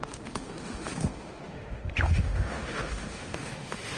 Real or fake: fake